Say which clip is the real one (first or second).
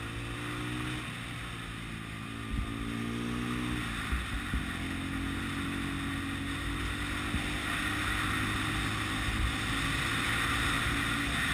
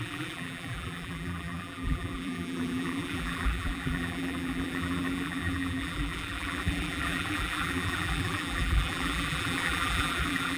first